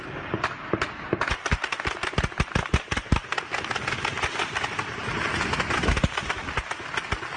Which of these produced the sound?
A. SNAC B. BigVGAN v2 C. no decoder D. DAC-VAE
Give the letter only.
C